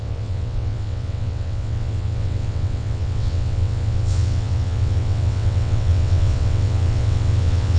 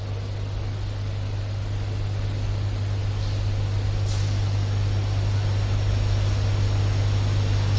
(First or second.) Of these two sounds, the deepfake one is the first